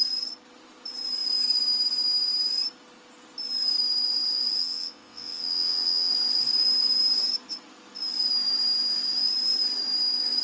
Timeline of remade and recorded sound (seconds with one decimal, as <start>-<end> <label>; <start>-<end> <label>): 0.0-4.6 recorded; 4.6-6.1 remade; 6.1-10.4 recorded